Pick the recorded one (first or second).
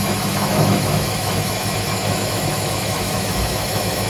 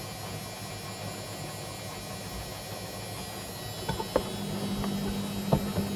second